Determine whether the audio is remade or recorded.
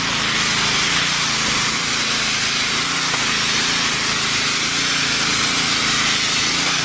recorded